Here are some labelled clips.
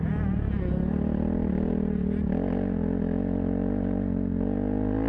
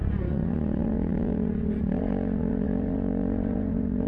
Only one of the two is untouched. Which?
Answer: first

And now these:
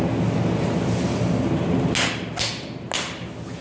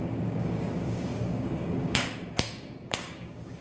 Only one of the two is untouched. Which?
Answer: first